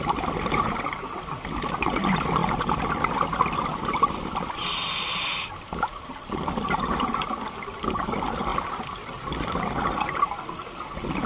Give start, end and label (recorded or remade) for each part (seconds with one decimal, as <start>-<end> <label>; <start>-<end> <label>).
0.0-11.3 recorded